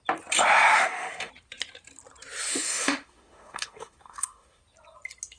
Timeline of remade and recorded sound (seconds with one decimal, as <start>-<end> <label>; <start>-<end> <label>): 0.0-0.7 recorded; 0.7-1.3 remade; 1.3-2.5 recorded; 2.5-4.6 remade; 4.6-5.4 recorded